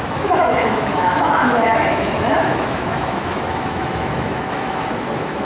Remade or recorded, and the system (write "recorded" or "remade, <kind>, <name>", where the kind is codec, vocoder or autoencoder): remade, autoencoder, DAC-VAE